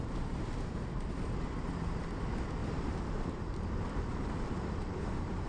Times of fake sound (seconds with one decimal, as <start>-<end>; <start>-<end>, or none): 2.6-5.5